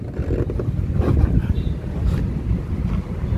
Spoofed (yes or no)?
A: no